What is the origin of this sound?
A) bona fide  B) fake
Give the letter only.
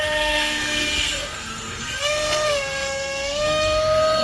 B